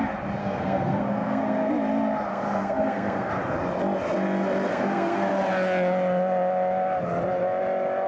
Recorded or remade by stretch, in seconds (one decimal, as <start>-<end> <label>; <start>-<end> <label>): 0.0-0.4 recorded; 0.4-1.7 remade; 1.7-2.3 recorded; 2.3-3.3 remade; 3.3-4.7 recorded; 4.7-5.3 remade; 5.3-8.1 recorded